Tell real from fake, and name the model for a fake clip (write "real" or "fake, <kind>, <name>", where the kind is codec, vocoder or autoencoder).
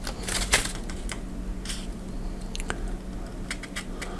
real